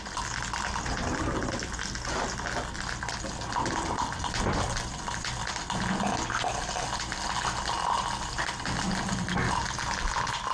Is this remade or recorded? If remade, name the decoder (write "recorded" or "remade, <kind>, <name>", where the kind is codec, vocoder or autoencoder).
recorded